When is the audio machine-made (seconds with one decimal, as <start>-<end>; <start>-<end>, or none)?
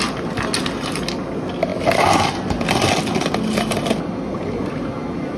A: none